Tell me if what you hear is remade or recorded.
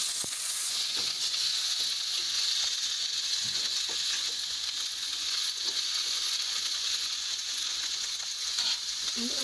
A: remade